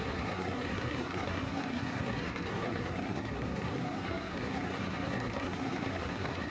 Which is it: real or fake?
fake